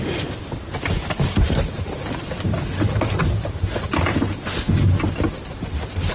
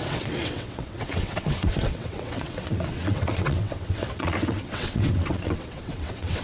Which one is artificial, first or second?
second